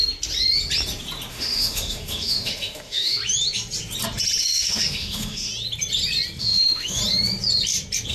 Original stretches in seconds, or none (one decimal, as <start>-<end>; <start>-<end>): 0.0-1.3; 3.2-4.4; 5.5-6.4; 7.0-8.1